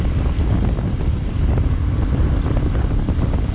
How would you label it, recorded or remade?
recorded